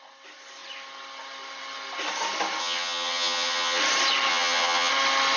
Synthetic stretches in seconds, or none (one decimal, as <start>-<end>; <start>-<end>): 2.6-3.8; 4.3-4.9